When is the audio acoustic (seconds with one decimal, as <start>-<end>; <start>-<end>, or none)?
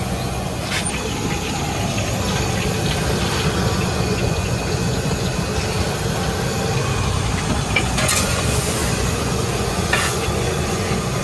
0.6-3.5; 5.3-7.8